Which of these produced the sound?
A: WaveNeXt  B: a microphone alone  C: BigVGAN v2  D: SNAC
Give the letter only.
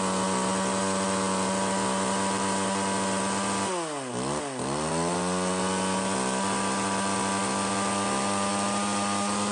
B